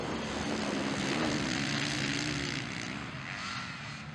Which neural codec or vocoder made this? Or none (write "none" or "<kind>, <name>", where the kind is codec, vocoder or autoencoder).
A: none